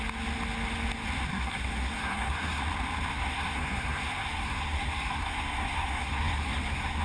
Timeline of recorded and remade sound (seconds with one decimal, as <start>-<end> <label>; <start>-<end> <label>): 0.0-1.3 recorded; 1.3-2.6 remade; 2.6-3.1 recorded; 3.1-7.0 remade